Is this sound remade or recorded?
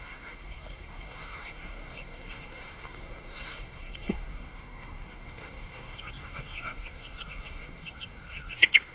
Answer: remade